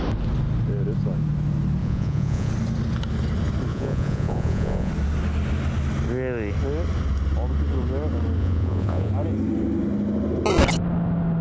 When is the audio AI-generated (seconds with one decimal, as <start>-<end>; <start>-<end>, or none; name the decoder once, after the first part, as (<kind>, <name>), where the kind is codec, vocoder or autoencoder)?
1.8-2.5 (vocoder, Vocos); 3.7-4.9; 8.4-9.1